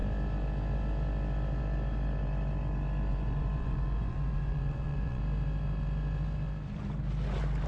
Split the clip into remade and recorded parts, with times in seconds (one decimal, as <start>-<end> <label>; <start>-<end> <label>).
0.0-3.1 recorded; 3.1-5.2 remade; 5.2-7.7 recorded